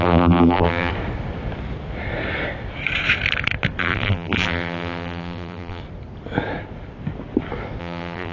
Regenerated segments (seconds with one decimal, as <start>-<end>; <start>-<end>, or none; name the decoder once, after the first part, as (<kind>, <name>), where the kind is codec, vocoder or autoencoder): 0.0-0.9 (vocoder, BigVGAN v2); 3.8-5.8; 7.8-8.3